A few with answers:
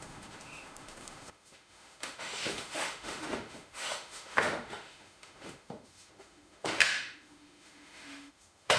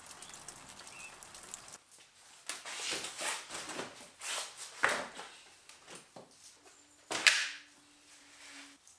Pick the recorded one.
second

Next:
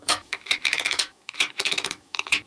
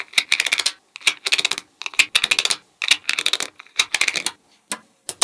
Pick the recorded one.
second